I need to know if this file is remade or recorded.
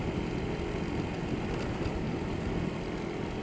recorded